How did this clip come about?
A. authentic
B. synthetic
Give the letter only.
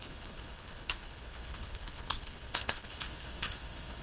B